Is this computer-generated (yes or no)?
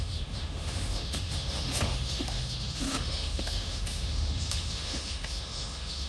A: yes